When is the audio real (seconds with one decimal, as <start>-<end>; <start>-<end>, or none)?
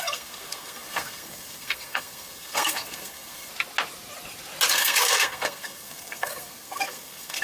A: 3.5-4.7